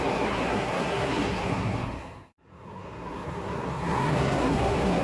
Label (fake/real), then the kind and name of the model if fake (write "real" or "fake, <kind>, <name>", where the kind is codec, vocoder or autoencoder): fake, codec, SNAC